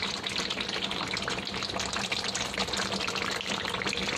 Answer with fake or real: real